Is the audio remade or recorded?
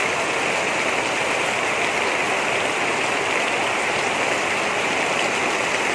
recorded